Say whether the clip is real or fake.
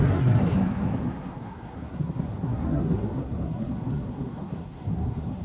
fake